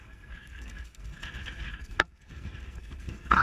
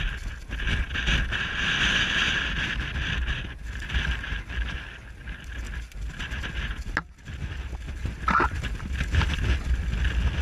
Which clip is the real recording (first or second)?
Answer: second